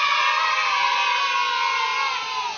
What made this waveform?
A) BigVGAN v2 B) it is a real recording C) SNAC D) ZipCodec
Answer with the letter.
B